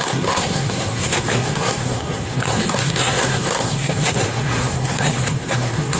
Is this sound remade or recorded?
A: remade